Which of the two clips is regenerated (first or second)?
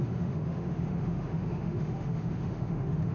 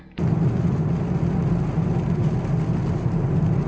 first